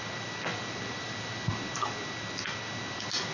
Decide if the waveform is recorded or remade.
recorded